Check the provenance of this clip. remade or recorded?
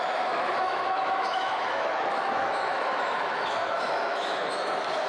remade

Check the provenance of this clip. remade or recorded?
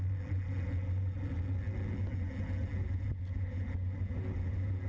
recorded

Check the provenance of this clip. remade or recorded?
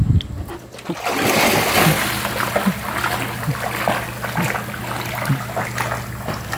recorded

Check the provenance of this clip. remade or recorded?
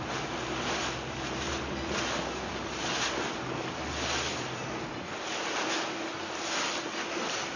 recorded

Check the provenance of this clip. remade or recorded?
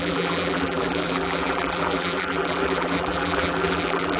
remade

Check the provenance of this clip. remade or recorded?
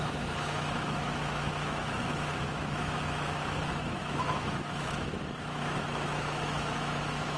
remade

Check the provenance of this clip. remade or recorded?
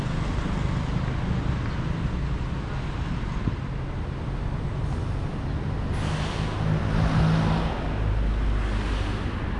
recorded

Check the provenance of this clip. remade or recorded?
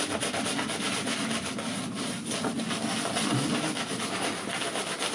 recorded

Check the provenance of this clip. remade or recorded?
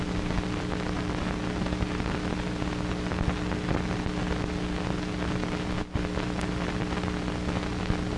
recorded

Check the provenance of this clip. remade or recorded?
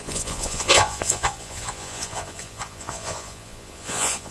remade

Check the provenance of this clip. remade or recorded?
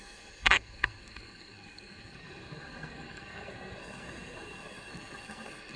remade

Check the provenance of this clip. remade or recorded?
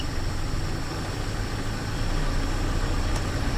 recorded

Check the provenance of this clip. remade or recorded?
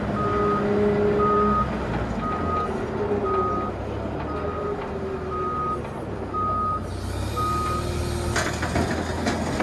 recorded